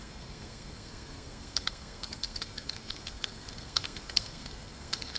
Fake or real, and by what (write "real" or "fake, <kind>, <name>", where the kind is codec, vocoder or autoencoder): fake, codec, SNAC